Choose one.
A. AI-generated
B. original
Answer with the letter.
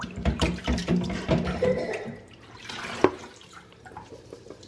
A